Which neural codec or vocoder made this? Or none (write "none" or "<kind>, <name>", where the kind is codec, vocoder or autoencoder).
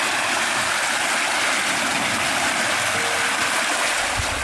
none